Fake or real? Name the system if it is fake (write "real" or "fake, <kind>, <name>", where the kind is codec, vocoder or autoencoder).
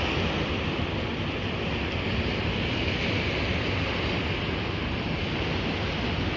real